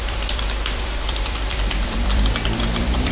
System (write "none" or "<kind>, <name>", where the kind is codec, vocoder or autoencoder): vocoder, BigVGAN v2